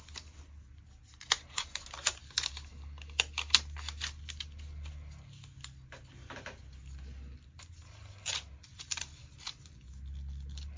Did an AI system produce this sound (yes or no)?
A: no